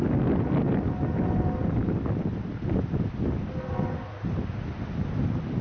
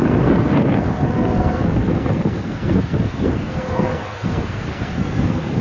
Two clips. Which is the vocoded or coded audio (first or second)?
second